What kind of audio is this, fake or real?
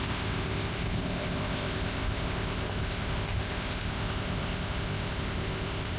fake